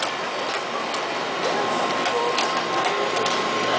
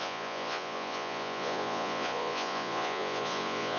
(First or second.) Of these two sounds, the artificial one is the second